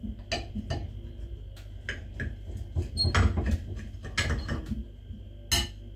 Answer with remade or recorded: recorded